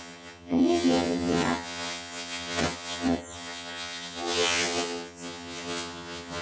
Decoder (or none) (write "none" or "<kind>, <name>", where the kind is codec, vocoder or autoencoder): vocoder, HiFi-GAN